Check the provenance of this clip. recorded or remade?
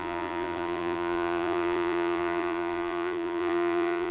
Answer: remade